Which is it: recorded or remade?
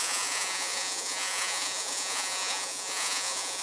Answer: remade